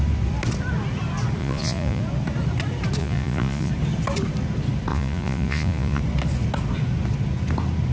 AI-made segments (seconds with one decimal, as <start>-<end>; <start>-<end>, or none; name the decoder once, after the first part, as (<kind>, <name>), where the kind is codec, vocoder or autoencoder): 1.4-2.0 (vocoder, Vocos); 3.0-3.7; 4.9-6.0